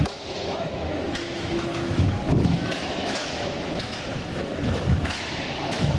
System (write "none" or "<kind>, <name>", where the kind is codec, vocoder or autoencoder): autoencoder, DAC-VAE